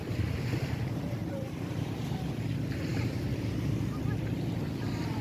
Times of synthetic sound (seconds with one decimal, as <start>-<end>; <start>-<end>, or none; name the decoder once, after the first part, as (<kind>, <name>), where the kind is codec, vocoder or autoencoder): 1.2-2.3 (vocoder, BigVGAN v2); 2.9-4.0